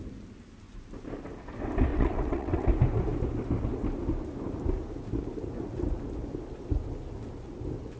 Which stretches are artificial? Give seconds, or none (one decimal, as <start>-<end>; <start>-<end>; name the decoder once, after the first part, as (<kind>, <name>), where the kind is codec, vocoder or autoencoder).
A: 1.9-2.7 (vocoder, WaveNeXt)